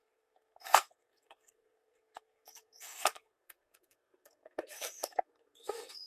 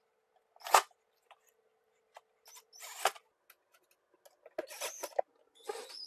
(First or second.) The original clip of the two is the second